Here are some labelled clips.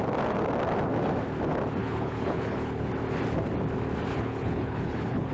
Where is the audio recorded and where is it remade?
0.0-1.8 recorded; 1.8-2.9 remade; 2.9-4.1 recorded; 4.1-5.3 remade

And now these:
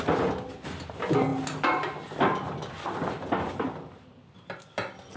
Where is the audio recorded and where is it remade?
0.0-5.2 recorded

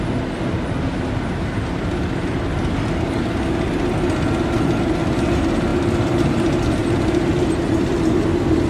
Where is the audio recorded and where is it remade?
0.0-6.8 recorded; 6.8-7.3 remade; 7.3-8.7 recorded

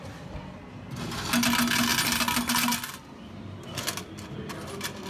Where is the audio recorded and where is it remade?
0.0-5.1 recorded

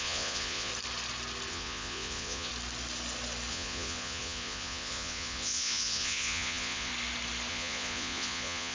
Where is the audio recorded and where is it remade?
0.0-0.7 remade; 0.7-1.5 recorded; 1.5-2.5 remade; 2.5-3.5 recorded; 3.5-6.9 remade; 6.9-7.5 recorded; 7.5-8.7 remade